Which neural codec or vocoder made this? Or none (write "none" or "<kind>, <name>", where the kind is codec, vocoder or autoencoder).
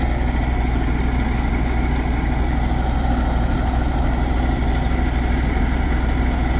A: none